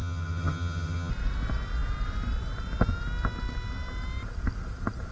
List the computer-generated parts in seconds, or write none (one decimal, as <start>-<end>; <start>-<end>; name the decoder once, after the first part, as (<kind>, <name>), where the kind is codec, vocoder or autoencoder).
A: 0.0-1.1 (vocoder, HiFi-GAN)